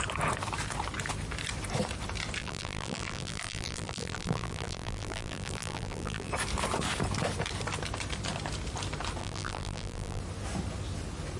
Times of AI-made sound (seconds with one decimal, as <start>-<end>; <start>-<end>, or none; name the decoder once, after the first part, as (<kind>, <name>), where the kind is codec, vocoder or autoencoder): 2.4-6.3 (vocoder, BigVGAN v2); 9.2-10.2